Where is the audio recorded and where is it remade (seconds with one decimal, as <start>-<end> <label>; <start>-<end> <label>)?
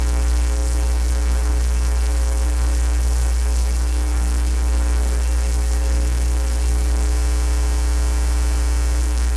0.0-7.1 remade; 7.1-9.0 recorded; 9.0-9.4 remade